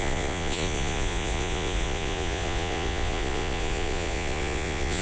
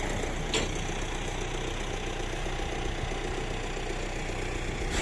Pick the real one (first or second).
second